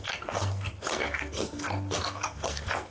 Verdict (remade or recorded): remade